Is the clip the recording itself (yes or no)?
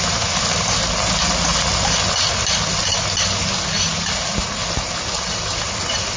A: yes